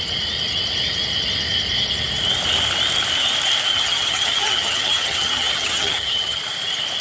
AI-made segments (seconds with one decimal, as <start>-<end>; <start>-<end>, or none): 3.7-6.4